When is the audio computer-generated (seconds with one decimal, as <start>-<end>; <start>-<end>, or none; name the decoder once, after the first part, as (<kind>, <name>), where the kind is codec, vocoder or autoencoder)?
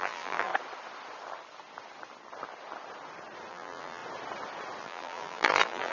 0.0-0.5 (vocoder, BigVGAN v2); 3.5-4.0; 4.8-5.9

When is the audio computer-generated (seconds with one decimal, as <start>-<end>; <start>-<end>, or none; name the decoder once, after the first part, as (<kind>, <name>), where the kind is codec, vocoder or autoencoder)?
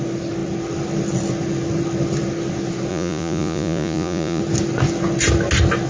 2.9-4.4 (vocoder, Vocos)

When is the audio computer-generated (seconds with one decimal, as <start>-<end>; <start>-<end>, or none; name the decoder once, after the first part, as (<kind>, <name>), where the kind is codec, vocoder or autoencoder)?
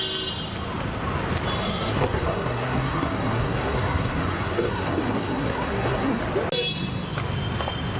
1.6-6.2 (codec, SNAC)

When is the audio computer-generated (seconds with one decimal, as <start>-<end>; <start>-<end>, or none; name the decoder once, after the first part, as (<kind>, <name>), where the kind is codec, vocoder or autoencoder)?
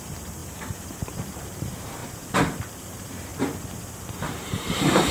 0.0-2.0 (vocoder, BigVGAN v2); 2.7-3.3; 4.1-5.1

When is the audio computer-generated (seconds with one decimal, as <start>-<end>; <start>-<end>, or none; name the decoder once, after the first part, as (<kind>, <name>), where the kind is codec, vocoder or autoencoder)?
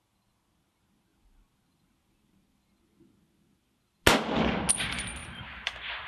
5.2-6.1 (vocoder, BigVGAN v2)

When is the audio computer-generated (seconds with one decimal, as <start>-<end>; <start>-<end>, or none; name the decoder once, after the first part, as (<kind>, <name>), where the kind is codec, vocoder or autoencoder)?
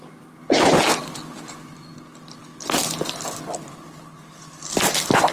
none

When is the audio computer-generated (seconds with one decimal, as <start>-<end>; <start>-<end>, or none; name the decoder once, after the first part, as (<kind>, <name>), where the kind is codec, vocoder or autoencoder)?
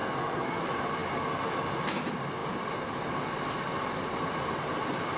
0.0-0.6 (codec, SNAC)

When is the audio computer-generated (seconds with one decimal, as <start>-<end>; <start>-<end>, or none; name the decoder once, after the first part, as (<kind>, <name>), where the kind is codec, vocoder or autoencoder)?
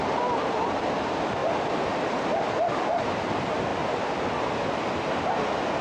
none